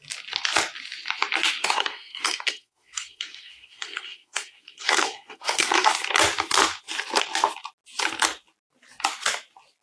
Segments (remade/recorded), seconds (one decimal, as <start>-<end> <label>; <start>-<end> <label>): 0.0-1.6 recorded; 1.6-5.9 remade; 5.9-9.8 recorded